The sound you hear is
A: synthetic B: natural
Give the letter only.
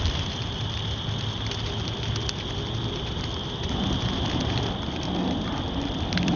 B